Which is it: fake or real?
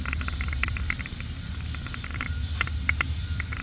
fake